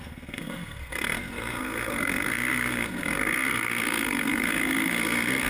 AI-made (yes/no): yes